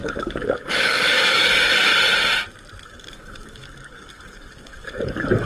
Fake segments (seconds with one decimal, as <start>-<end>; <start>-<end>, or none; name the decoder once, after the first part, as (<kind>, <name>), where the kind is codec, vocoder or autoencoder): 0.0-1.9 (codec, DAC); 2.8-5.5